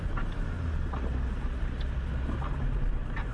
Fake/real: real